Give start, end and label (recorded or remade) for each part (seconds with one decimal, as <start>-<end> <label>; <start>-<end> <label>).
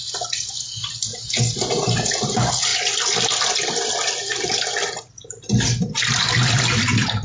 0.0-1.1 remade; 1.1-2.1 recorded; 2.1-2.7 remade; 2.7-3.8 recorded; 3.8-7.2 remade